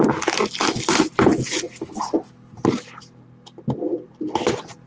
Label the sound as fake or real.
real